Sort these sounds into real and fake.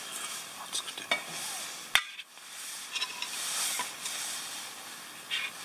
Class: real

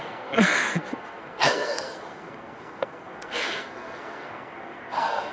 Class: fake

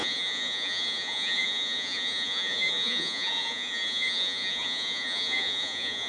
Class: fake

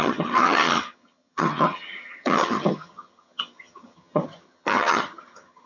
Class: fake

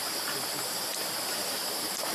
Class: real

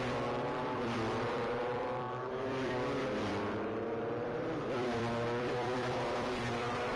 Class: fake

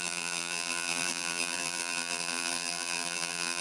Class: fake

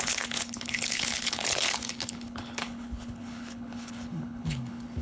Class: fake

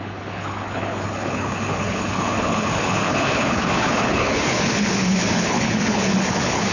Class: fake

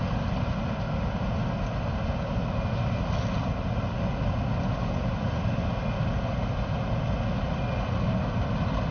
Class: real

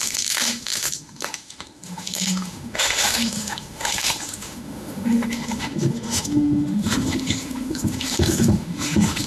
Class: fake